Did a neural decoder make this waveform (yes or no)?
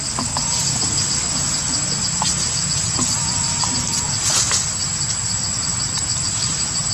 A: no